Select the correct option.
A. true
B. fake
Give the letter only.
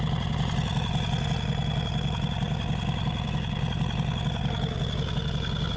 A